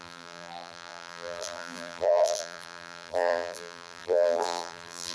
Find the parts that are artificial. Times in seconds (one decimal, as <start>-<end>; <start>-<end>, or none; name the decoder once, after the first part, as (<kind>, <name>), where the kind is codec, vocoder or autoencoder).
0.0-5.1 (vocoder, BigVGAN v2)

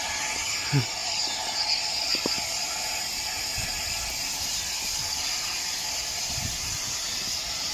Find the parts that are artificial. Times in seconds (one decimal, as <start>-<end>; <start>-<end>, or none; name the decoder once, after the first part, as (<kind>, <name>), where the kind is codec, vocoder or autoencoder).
none